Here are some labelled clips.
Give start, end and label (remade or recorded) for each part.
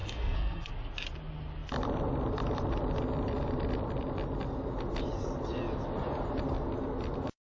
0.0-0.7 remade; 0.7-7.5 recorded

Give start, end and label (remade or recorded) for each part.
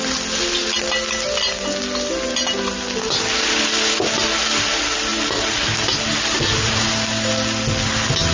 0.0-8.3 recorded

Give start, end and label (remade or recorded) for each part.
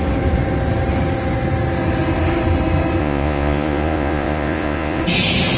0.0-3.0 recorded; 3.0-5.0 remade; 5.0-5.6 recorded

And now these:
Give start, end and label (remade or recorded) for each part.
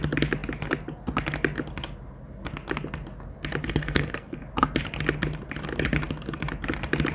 0.0-3.6 recorded; 3.6-4.4 remade; 4.4-7.1 recorded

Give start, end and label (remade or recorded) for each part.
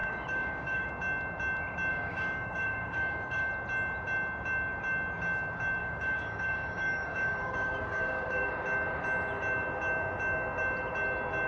0.0-0.9 remade; 0.9-1.9 recorded; 1.9-3.5 remade; 3.5-5.8 recorded; 5.8-8.5 remade; 8.5-11.5 recorded